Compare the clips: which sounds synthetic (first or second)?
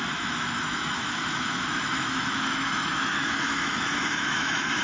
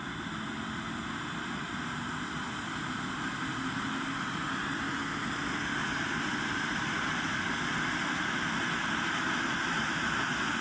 first